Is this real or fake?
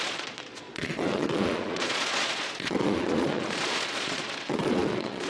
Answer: fake